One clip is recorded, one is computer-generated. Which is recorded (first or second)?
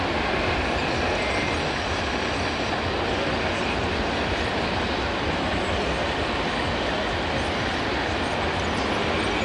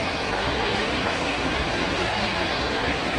first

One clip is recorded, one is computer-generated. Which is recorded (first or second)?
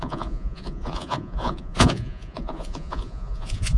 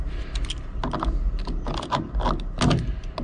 second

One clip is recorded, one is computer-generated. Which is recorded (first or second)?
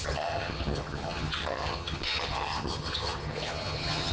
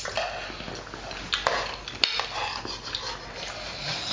second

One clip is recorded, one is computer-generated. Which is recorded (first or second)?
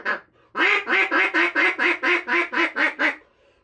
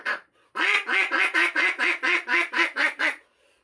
first